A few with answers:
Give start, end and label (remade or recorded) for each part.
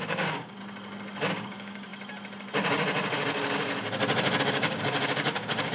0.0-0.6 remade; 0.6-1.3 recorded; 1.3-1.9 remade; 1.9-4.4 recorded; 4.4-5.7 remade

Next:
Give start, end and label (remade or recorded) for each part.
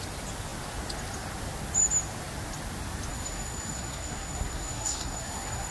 0.0-3.1 recorded; 3.1-5.7 remade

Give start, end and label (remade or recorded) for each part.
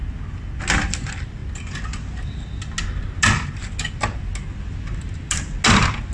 0.0-6.1 recorded